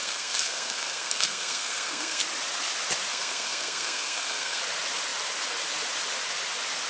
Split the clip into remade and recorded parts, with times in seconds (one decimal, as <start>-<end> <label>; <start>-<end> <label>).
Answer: 0.0-2.2 remade; 2.2-3.1 recorded; 3.1-4.6 remade; 4.6-6.9 recorded